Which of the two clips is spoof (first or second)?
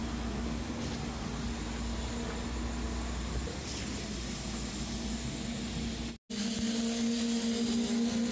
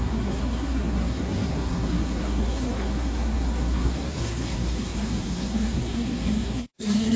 second